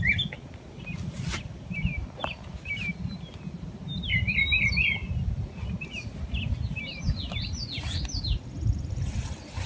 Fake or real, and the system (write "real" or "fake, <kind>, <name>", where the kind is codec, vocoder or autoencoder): real